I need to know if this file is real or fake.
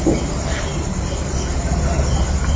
real